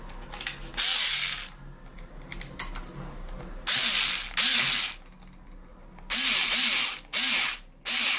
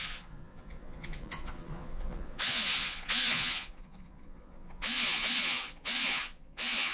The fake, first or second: second